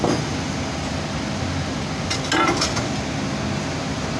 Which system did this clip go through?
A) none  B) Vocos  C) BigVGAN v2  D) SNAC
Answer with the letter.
A